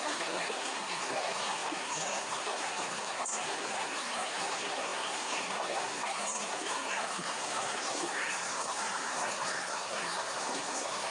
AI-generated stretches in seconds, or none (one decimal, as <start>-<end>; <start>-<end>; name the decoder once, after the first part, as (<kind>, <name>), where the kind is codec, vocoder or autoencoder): 0.0-11.1 (codec, SNAC)